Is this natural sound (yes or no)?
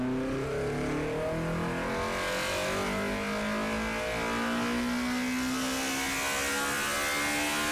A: yes